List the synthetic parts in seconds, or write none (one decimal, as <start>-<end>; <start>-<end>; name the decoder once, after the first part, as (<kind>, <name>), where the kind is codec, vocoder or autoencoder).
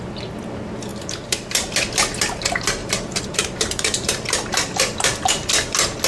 0.9-1.7 (vocoder, BigVGAN v2); 2.8-4.6